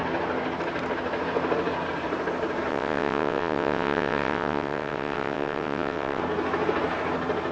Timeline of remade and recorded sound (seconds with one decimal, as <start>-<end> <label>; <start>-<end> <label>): 0.0-2.7 recorded; 2.7-6.2 remade; 6.2-7.5 recorded